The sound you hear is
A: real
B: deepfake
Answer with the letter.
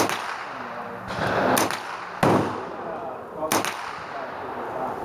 A